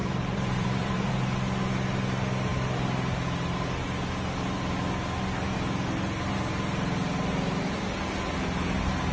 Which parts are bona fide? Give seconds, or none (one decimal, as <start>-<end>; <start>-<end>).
1.1-9.1